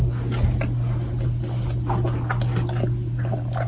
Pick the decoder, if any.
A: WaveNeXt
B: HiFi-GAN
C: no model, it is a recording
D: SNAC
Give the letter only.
C